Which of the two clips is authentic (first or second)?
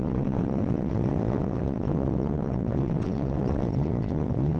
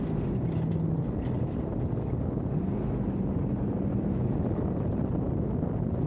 second